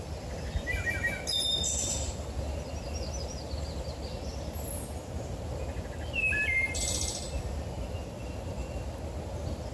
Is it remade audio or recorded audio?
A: recorded